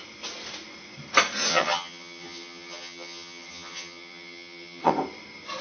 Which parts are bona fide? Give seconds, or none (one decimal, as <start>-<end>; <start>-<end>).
0.0-1.5; 4.9-5.6